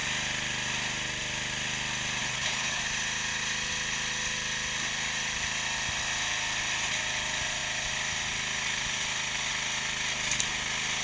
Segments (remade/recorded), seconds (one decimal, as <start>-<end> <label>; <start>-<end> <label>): 0.0-2.2 recorded; 2.2-2.8 remade; 2.8-11.0 recorded

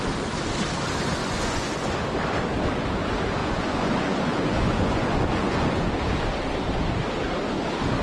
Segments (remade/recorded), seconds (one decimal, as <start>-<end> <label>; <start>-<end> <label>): 0.0-1.2 recorded; 1.2-1.9 remade; 1.9-3.4 recorded; 3.4-5.9 remade; 5.9-8.0 recorded

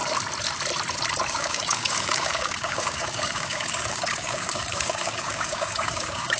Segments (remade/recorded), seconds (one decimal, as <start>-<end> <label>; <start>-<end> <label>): 0.0-1.3 recorded; 1.3-6.4 remade